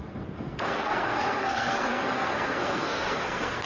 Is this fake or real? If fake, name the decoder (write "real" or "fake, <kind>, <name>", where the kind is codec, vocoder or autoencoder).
fake, codec, SNAC